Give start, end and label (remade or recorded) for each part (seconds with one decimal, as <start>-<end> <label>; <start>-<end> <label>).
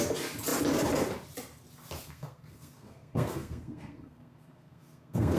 0.0-2.0 recorded; 2.0-5.4 remade